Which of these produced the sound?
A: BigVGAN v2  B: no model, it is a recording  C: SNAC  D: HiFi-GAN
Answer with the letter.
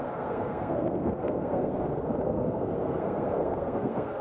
C